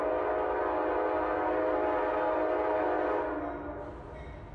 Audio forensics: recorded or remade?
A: recorded